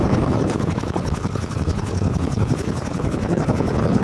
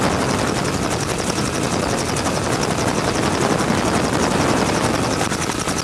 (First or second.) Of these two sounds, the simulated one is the first